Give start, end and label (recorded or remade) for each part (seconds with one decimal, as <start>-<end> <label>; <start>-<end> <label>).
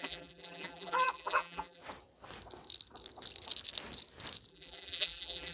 0.0-1.8 remade; 1.8-4.5 recorded; 4.5-5.5 remade